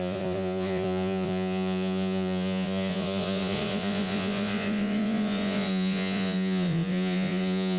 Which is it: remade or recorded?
remade